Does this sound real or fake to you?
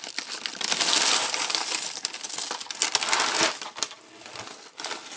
real